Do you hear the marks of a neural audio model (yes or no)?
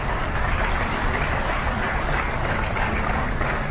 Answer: yes